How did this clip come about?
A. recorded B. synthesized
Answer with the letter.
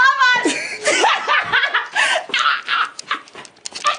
A